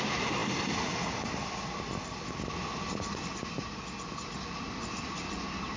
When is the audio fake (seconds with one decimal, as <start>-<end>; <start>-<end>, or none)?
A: none